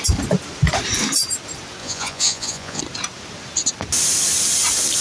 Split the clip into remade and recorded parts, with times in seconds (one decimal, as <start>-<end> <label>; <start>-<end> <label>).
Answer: 0.0-1.8 recorded; 1.8-2.8 remade; 2.8-5.0 recorded